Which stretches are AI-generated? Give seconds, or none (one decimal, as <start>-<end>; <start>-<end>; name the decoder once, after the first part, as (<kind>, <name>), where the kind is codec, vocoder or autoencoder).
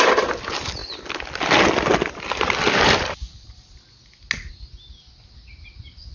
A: none